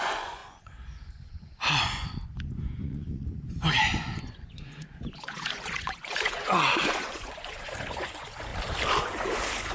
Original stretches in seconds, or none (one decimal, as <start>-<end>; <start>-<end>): 8.5-9.0